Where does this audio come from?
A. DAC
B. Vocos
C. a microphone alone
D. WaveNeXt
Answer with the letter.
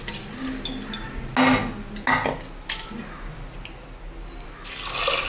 C